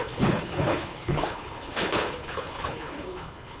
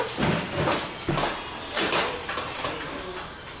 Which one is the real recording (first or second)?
second